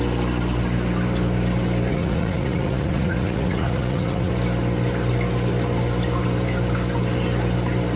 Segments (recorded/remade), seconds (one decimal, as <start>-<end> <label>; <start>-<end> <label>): 0.0-1.9 recorded; 1.9-4.3 remade; 4.3-8.0 recorded

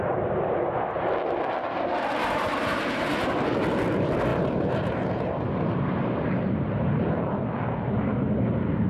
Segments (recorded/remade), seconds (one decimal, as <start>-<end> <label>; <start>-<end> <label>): 0.0-2.2 recorded; 2.2-2.8 remade; 2.8-4.3 recorded; 4.3-7.0 remade; 7.0-8.9 recorded

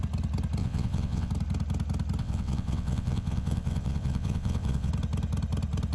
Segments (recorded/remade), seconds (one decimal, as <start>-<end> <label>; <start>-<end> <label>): 0.0-0.6 recorded; 0.6-1.3 remade; 1.3-2.2 recorded; 2.2-4.9 remade; 4.9-5.9 recorded

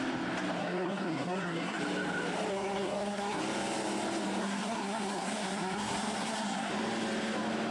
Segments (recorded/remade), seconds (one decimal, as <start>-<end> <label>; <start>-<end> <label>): 0.0-0.6 recorded; 0.6-1.8 remade; 1.8-2.5 recorded; 2.5-3.4 remade; 3.4-4.4 recorded; 4.4-6.7 remade; 6.7-7.7 recorded

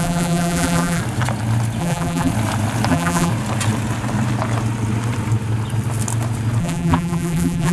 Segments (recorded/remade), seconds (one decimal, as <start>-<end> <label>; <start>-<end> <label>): 0.0-1.0 remade; 1.0-1.8 recorded; 1.8-2.3 remade; 2.3-2.9 recorded; 2.9-3.3 remade; 3.3-6.6 recorded; 6.6-7.7 remade

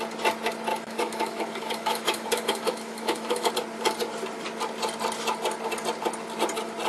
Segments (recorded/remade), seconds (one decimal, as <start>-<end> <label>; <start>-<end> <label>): 0.0-0.7 recorded; 0.7-3.5 remade; 3.5-6.9 recorded

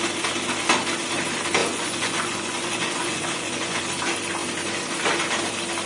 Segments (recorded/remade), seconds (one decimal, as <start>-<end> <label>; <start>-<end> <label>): 0.0-1.6 recorded; 1.6-3.8 remade; 3.8-5.9 recorded